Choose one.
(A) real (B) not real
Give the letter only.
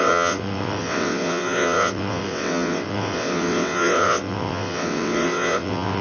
B